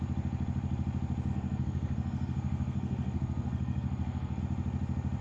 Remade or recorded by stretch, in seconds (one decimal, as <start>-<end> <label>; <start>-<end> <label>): 0.0-1.3 recorded; 1.3-4.4 remade; 4.4-5.2 recorded